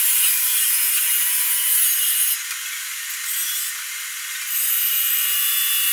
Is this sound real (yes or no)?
yes